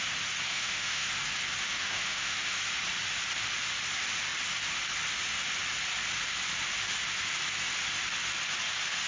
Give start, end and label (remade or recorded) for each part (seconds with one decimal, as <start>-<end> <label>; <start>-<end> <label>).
0.0-0.5 recorded; 0.5-1.1 remade; 1.1-1.7 recorded; 1.7-2.6 remade; 2.6-9.1 recorded